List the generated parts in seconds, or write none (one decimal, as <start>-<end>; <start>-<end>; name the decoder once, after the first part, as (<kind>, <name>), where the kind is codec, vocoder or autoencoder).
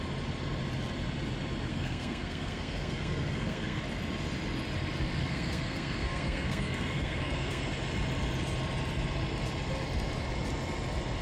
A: 1.7-3.8 (codec, SNAC); 5.2-7.6